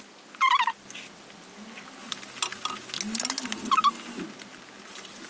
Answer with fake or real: real